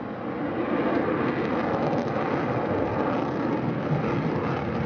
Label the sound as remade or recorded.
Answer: recorded